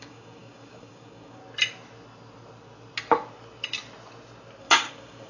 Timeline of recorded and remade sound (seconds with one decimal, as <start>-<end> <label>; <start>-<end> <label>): 0.0-1.4 remade; 1.4-4.6 recorded; 4.6-5.3 remade

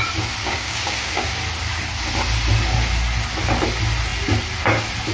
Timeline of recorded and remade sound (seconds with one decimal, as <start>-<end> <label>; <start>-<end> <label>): 0.0-0.4 recorded; 0.4-1.4 remade; 1.4-5.1 recorded

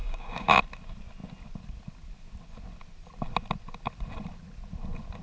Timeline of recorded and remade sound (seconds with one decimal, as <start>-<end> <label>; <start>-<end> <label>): 0.0-0.6 remade; 0.6-5.2 recorded

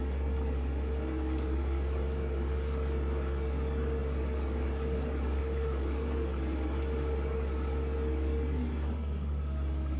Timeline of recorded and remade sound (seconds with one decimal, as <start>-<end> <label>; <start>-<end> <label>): 0.0-10.0 remade

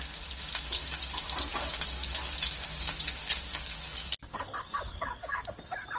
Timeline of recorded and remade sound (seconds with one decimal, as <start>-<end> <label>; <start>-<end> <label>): 0.0-3.5 recorded; 3.5-5.3 remade; 5.3-6.0 recorded

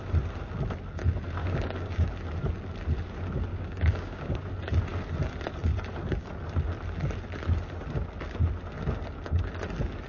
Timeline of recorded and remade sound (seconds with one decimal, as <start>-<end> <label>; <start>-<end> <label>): 0.0-1.4 recorded; 1.4-2.1 remade; 2.1-3.5 recorded; 3.5-4.5 remade; 4.5-10.1 recorded